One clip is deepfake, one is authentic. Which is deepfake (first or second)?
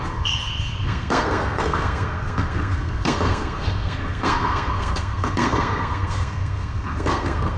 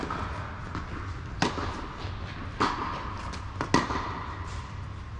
first